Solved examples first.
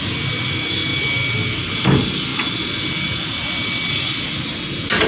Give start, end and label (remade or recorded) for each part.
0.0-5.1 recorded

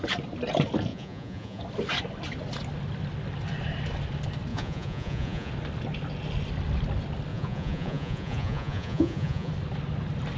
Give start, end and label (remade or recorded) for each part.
0.0-0.9 recorded; 0.9-1.6 remade; 1.6-4.5 recorded; 4.5-5.5 remade; 5.5-7.3 recorded; 7.3-9.5 remade; 9.5-10.4 recorded

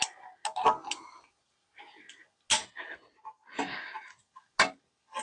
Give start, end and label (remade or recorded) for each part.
0.0-5.2 recorded

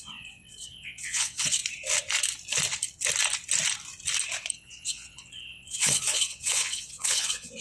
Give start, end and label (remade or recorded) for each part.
0.0-1.6 remade; 1.6-4.5 recorded; 4.5-7.6 remade